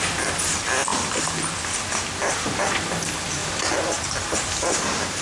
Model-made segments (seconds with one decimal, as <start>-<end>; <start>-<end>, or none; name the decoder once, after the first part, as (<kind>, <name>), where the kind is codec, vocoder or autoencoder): 0.0-0.9 (vocoder, BigVGAN v2); 2.3-3.4; 4.6-5.2